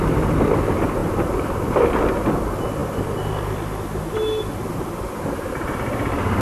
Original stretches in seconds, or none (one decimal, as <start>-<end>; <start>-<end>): 0.0-6.4